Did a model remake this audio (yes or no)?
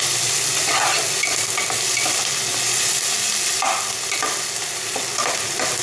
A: no